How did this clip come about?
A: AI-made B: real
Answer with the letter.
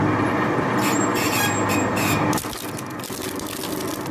B